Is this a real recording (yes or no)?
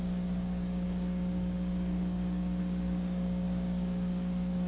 no